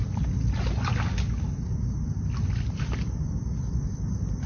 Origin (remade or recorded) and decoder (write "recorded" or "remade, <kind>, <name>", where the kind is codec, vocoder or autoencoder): recorded